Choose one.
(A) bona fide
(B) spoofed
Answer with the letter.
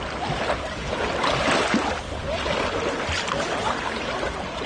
A